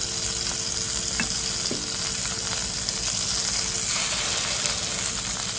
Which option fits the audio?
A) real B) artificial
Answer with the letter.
A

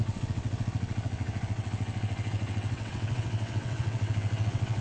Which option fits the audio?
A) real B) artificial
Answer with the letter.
B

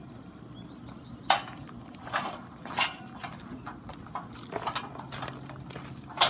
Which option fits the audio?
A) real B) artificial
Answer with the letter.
A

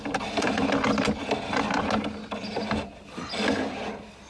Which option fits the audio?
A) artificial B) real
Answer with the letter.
B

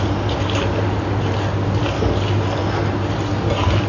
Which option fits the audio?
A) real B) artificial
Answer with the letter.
A